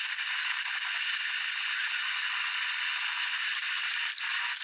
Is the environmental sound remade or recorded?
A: recorded